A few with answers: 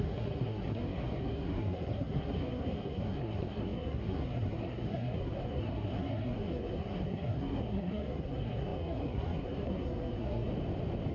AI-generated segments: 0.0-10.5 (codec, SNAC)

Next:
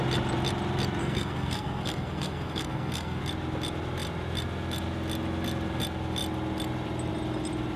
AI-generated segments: 1.0-3.2 (codec, SNAC)

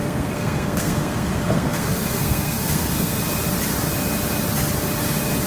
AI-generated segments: 0.0-3.2 (codec, SNAC)

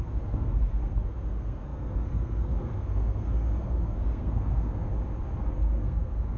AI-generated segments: 0.0-4.9 (codec, SNAC); 5.4-6.4

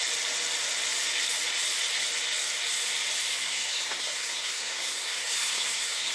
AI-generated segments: 3.3-6.1 (codec, SNAC)

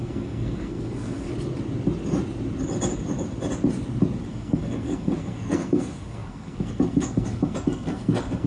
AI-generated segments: 0.0-1.3 (codec, SNAC); 4.3-8.5

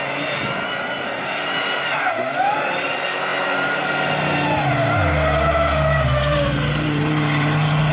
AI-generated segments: none

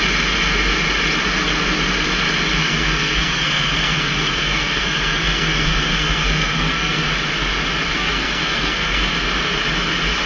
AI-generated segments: 2.6-7.1 (codec, SNAC); 7.9-9.1